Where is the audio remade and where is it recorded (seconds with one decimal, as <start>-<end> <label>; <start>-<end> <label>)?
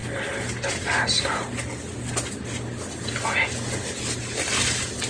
0.0-5.1 recorded